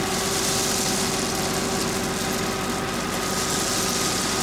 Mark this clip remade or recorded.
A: recorded